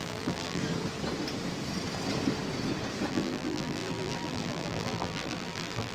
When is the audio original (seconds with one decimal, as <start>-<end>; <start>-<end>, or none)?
0.6-3.1